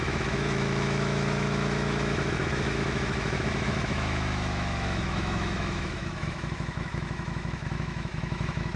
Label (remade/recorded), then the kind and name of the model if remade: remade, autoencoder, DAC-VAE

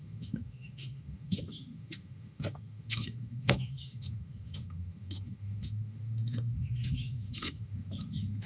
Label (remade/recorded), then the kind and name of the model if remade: remade, autoencoder, DAC-VAE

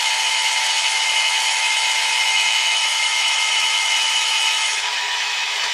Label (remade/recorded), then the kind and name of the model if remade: remade, autoencoder, DAC-VAE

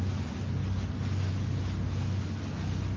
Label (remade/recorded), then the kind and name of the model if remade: recorded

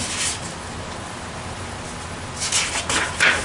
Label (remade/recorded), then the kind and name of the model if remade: recorded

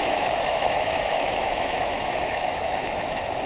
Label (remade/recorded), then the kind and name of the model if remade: remade, autoencoder, DAC-VAE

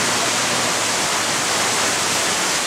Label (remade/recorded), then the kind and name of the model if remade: recorded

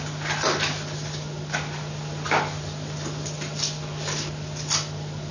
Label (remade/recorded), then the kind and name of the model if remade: recorded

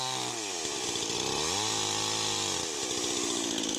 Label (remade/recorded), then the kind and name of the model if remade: recorded